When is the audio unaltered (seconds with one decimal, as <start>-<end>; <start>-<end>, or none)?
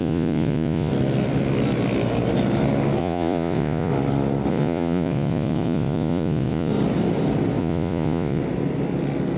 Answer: 0.9-3.0; 3.9-4.5; 6.7-7.6; 8.4-9.4